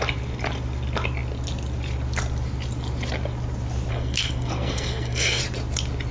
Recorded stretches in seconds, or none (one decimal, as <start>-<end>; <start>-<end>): 0.0-3.9; 5.4-6.1